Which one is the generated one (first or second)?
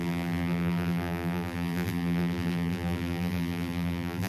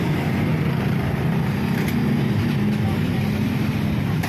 first